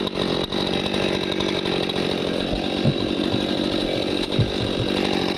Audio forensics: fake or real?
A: fake